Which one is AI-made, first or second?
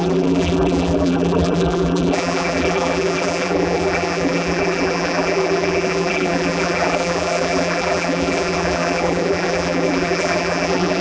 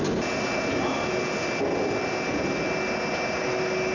first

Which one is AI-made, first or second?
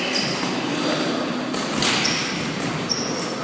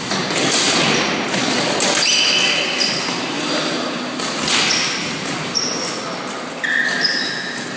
first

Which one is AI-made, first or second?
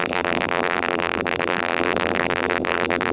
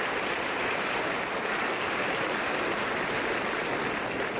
first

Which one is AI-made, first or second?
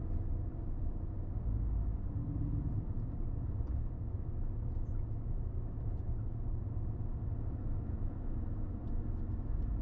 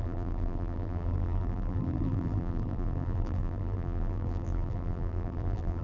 second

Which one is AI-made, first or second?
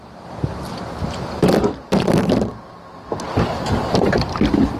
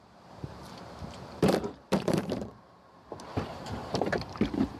second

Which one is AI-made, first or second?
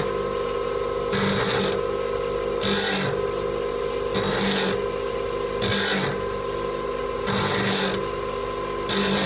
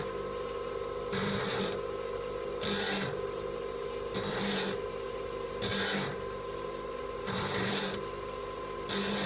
second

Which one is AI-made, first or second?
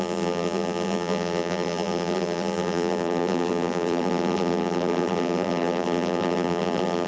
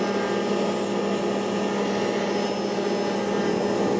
first